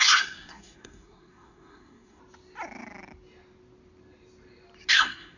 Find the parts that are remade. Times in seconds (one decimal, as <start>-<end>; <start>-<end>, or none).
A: 0.0-2.2; 4.9-5.4